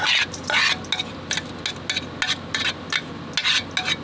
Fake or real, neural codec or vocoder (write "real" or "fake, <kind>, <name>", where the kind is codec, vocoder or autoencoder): real